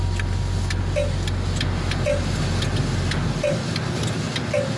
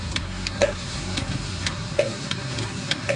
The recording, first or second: first